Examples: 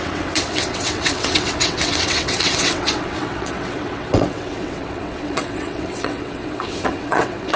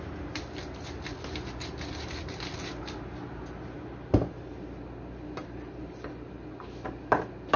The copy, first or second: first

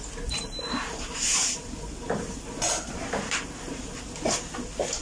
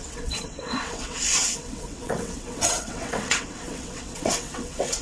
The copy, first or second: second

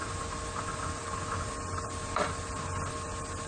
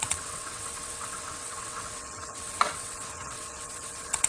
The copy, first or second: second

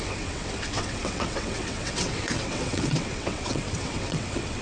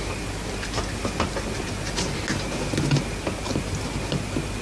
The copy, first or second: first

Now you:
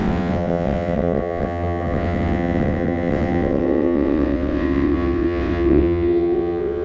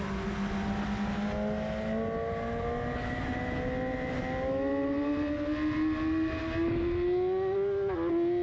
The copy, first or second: first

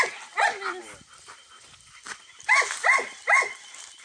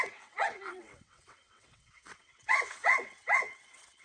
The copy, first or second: second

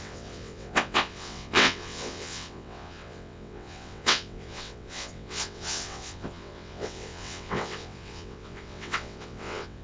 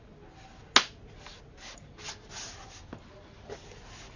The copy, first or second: first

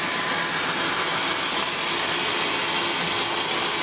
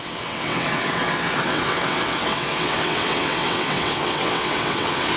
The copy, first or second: second